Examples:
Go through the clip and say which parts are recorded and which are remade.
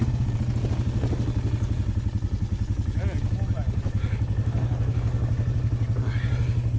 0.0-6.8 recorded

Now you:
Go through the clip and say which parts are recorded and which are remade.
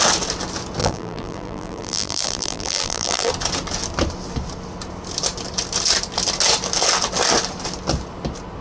0.0-0.8 recorded; 0.8-3.3 remade; 3.3-8.6 recorded